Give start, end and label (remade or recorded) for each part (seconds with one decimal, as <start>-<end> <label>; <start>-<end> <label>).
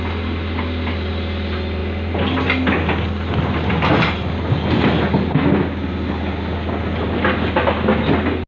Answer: 0.0-8.5 recorded